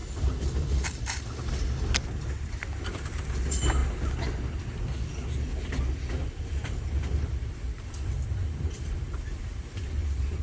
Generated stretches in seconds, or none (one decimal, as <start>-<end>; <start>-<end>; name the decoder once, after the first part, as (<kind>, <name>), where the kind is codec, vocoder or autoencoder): 0.6-3.8 (vocoder, BigVGAN v2); 6.4-10.4